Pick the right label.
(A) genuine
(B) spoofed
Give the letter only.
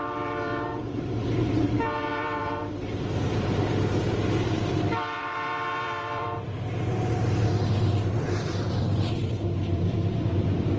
B